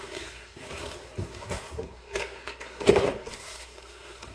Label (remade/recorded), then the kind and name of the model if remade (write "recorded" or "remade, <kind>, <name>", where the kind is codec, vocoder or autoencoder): remade, codec, SNAC